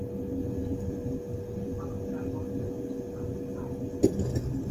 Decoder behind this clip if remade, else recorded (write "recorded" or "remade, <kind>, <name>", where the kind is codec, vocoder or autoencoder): recorded